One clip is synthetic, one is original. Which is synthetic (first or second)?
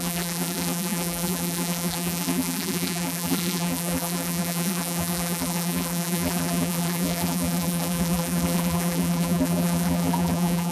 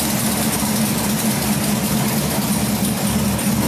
first